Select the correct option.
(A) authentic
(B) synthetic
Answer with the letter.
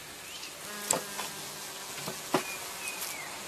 A